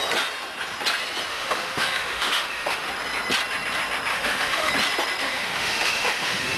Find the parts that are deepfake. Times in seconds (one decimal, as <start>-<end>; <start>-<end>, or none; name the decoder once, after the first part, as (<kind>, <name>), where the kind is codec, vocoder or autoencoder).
1.3-2.9 (autoencoder, DAC-VAE); 4.1-4.7; 5.2-6.6